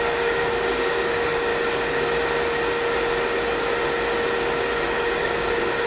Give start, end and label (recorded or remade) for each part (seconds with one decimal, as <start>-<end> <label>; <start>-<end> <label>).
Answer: 0.0-1.5 remade; 1.5-5.0 recorded; 5.0-5.9 remade